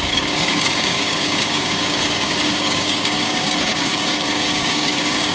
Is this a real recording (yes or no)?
no